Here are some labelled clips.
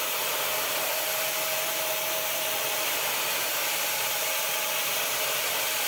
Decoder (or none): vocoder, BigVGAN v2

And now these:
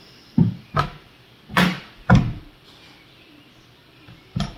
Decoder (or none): vocoder, BigVGAN v2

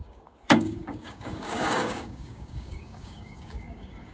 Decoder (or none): codec, DAC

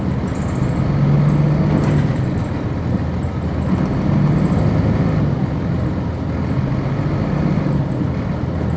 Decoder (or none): none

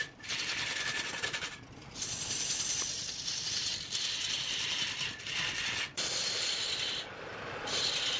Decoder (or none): none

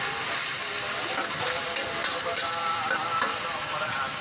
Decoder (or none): none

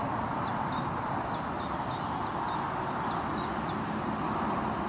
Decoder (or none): none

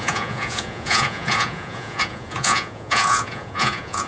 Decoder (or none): vocoder, Vocos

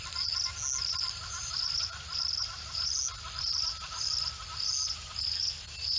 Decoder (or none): none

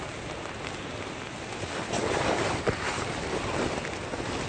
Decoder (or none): none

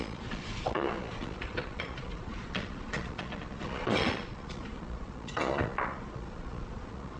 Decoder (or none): vocoder, Vocos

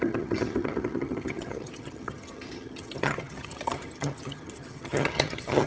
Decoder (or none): vocoder, HiFi-GAN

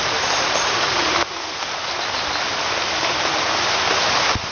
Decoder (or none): none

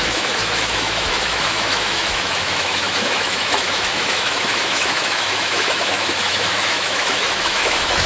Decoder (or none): autoencoder, DAC-VAE